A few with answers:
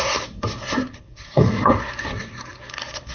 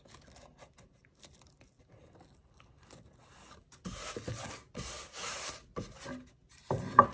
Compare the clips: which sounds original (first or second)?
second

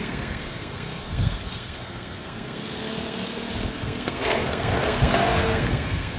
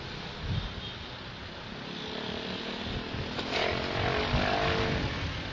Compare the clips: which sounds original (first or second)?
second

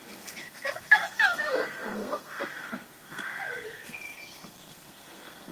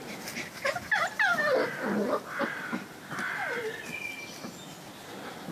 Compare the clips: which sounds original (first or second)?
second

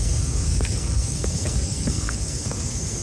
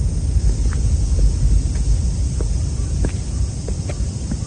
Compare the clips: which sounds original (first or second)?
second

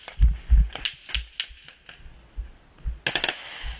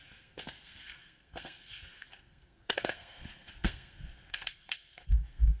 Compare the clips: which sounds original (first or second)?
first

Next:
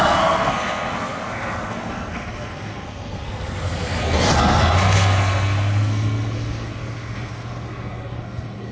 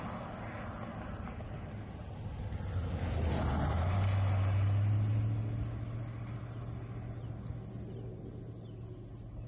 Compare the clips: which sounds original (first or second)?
second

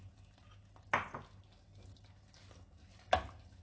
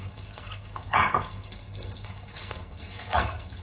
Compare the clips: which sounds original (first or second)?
first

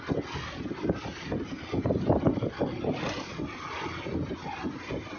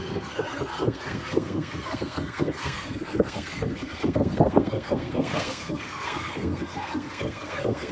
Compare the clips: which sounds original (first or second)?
first